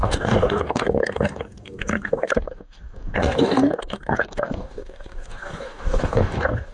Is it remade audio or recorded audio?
remade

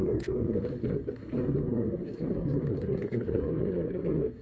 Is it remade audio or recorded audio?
remade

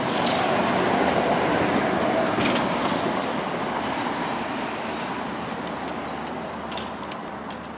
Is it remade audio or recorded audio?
recorded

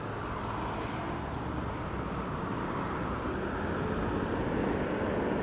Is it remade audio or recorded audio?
recorded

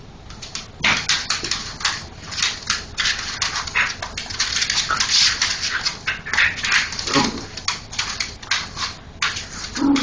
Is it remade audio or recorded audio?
recorded